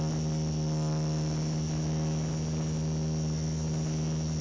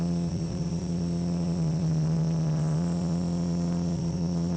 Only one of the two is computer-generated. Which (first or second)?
second